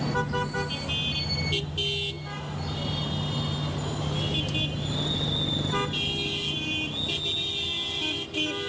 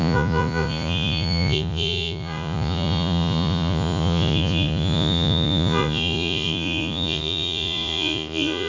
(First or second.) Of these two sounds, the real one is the first